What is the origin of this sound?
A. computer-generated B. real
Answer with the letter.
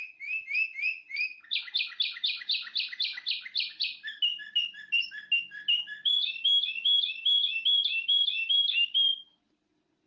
B